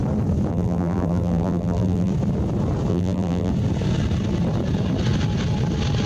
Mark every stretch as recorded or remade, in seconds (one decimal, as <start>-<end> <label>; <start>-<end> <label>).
0.0-0.5 recorded; 0.5-2.1 remade; 2.1-2.9 recorded; 2.9-3.5 remade; 3.5-6.1 recorded